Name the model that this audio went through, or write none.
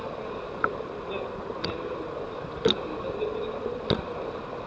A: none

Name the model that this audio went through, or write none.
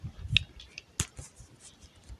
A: none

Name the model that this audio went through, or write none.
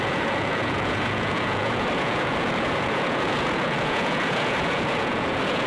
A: vocoder, Vocos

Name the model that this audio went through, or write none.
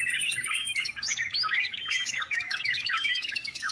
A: codec, DAC